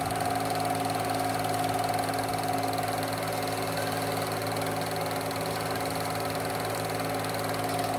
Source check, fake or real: real